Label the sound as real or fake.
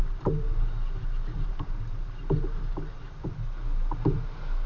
real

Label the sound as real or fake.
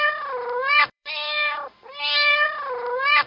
fake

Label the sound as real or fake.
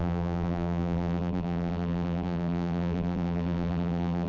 fake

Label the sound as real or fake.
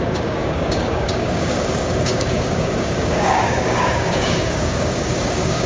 fake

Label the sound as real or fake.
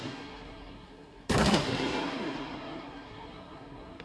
fake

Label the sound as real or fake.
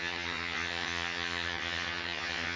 fake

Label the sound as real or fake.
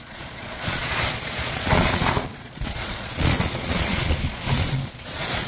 fake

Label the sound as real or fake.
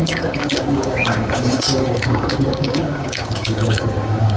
fake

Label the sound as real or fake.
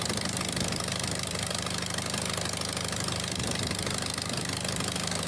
real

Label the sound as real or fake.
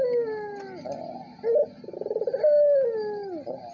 real